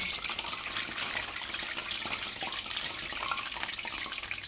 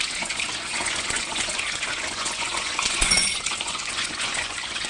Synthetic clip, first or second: second